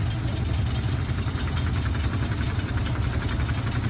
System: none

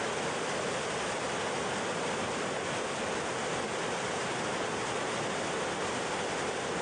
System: none